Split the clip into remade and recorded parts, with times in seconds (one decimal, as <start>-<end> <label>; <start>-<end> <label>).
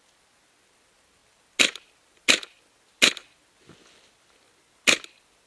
0.0-5.5 recorded